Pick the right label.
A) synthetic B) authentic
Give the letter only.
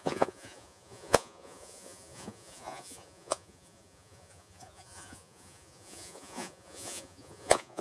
A